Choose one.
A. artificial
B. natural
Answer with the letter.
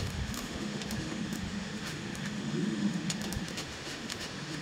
A